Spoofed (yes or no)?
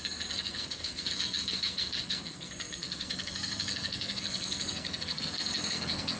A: yes